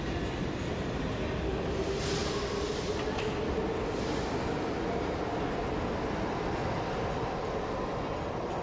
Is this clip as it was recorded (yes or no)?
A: yes